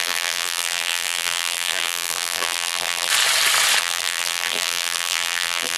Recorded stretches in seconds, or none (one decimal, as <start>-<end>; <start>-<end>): 3.1-3.8